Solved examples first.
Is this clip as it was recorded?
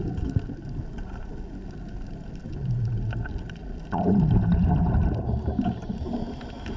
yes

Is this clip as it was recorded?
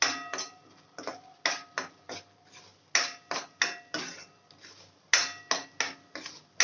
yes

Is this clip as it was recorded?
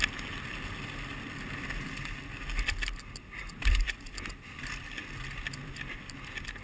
yes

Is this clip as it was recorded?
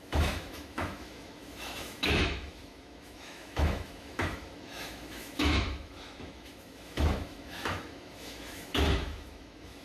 no